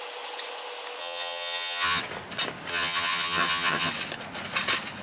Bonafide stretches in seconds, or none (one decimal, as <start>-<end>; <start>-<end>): 0.0-1.0; 2.0-2.7; 3.9-5.0